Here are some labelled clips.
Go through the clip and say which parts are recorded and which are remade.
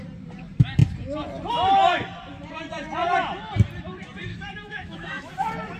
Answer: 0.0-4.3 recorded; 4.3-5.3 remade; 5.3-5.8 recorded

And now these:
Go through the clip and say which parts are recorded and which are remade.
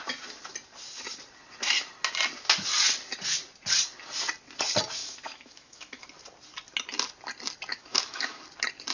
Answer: 0.0-5.0 recorded; 5.0-6.0 remade; 6.0-7.7 recorded; 7.7-8.4 remade; 8.4-8.9 recorded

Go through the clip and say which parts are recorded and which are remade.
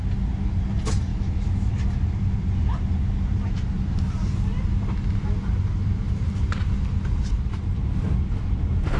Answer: 0.0-1.1 recorded; 1.1-1.7 remade; 1.7-9.0 recorded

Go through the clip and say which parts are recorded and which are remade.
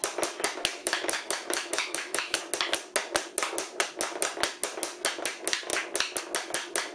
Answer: 0.0-0.8 recorded; 0.8-2.4 remade; 2.4-6.9 recorded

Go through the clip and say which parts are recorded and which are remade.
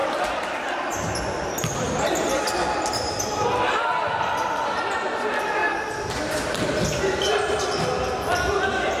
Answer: 0.0-9.0 recorded